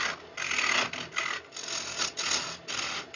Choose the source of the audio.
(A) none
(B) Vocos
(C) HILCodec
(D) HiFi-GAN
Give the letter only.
A